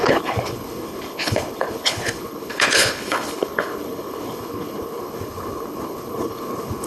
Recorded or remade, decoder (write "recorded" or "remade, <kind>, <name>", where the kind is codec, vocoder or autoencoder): remade, codec, HILCodec